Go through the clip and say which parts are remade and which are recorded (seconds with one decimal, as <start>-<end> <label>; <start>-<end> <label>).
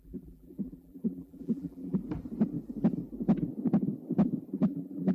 0.0-2.0 remade; 2.0-4.5 recorded; 4.5-5.1 remade